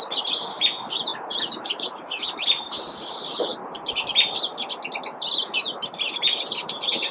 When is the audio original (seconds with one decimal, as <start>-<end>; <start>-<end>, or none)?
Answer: 1.1-1.6; 3.5-5.3